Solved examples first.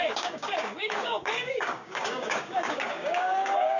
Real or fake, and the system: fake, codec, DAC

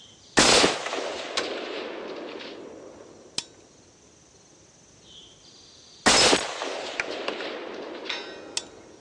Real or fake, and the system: real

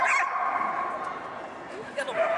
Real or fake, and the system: real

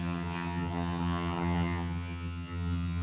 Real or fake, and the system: fake, vocoder, HiFi-GAN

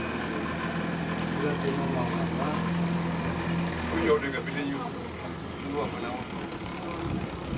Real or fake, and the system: real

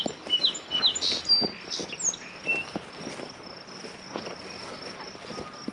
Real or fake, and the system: real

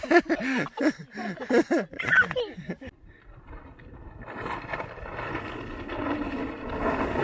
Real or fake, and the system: real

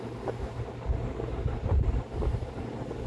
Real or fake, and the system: real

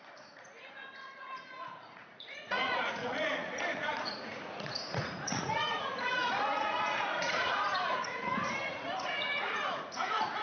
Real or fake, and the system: fake, vocoder, Vocos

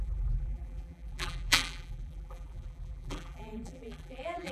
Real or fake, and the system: fake, vocoder, BigVGAN v2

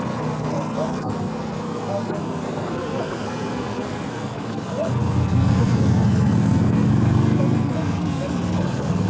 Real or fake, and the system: fake, codec, SNAC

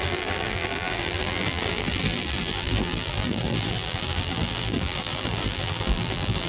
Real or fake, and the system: fake, vocoder, BigVGAN v2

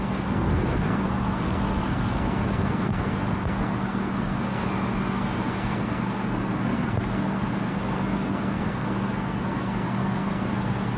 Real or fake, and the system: fake, codec, SNAC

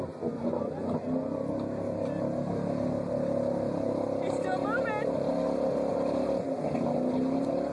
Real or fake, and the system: real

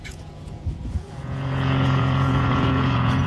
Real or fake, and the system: fake, vocoder, Vocos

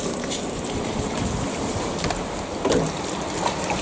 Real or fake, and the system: real